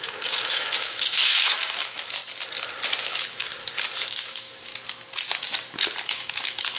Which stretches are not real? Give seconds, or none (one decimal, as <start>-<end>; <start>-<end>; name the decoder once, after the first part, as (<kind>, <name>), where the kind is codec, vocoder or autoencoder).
0.0-2.2 (autoencoder, DAC-VAE); 3.0-3.5; 4.1-4.7; 6.0-6.8